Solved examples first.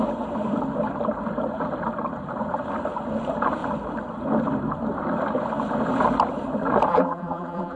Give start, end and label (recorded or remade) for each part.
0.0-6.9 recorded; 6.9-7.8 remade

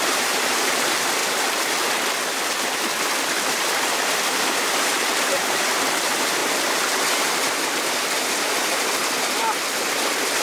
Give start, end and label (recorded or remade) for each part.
0.0-1.2 remade; 1.2-3.0 recorded; 3.0-10.4 remade